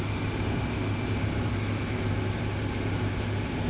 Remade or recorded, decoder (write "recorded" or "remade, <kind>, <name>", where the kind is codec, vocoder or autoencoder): recorded